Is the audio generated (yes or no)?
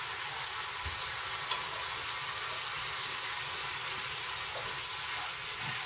no